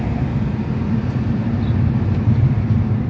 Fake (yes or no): no